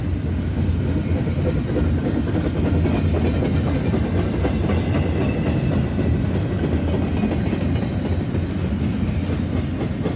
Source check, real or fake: real